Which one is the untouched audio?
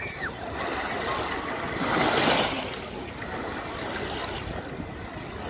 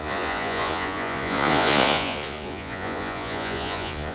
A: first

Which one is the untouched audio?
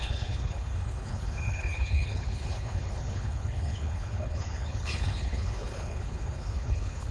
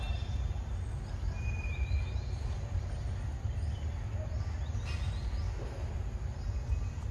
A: second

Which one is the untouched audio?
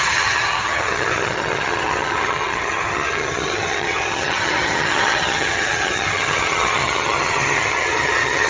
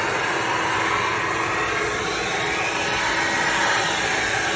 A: second